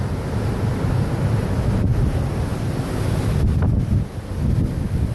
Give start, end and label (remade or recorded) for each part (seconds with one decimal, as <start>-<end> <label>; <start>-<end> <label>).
0.0-5.1 recorded